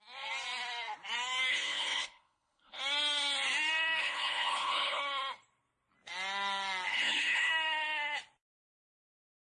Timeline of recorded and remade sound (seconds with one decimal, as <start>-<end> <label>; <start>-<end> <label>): 0.0-1.5 recorded; 1.5-2.8 remade; 2.8-4.0 recorded; 4.0-5.0 remade; 5.0-6.9 recorded; 6.9-7.5 remade; 7.5-9.5 recorded